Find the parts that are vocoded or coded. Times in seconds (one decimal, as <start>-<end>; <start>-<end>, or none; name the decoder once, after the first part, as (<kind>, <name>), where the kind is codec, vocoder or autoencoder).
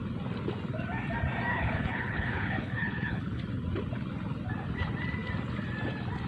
1.5-3.4 (codec, HILCodec)